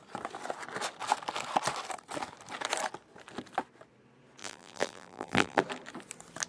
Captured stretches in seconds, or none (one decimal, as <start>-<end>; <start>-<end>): 0.0-4.4; 5.6-6.5